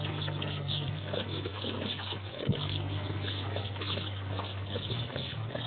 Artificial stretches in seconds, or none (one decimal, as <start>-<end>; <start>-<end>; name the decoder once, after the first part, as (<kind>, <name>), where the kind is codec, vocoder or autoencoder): 0.0-5.7 (codec, SNAC)